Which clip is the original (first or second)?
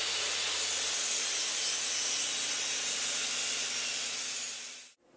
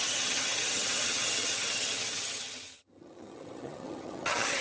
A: first